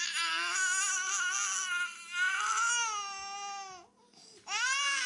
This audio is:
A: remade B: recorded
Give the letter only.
B